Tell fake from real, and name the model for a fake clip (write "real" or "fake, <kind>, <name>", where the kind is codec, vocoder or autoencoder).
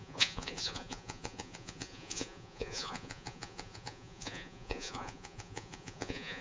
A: fake, vocoder, Vocos